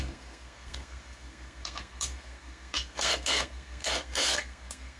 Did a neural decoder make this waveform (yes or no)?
yes